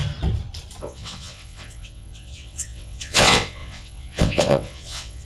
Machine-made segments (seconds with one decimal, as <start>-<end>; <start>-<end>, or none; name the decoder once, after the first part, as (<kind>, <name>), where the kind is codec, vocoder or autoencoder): 0.8-5.3 (vocoder, WaveNeXt)